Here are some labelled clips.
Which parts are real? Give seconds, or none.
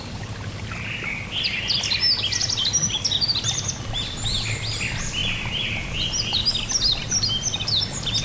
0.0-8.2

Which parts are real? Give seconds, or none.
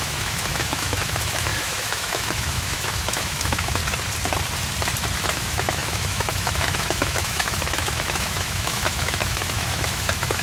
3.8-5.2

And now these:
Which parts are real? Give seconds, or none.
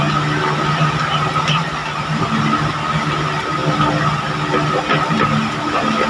0.0-6.1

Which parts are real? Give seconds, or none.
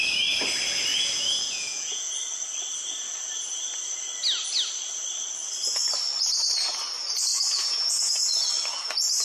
0.0-0.9; 2.1-7.3; 8.2-9.2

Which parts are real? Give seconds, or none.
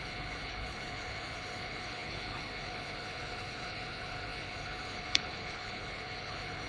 none